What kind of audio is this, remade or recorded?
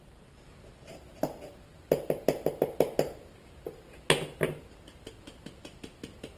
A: recorded